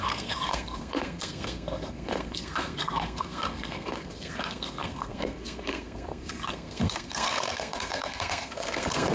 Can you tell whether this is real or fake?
fake